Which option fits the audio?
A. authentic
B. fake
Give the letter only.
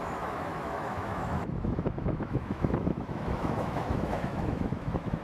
B